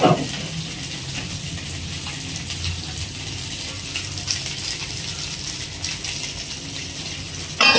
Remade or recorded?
recorded